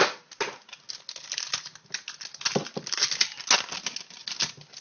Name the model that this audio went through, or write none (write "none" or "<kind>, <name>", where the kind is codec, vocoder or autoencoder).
none